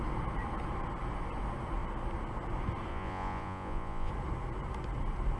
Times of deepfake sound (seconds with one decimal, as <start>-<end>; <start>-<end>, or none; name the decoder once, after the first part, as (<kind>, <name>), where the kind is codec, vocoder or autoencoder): 2.9-4.1 (vocoder, Vocos)